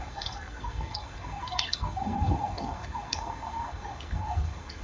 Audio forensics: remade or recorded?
remade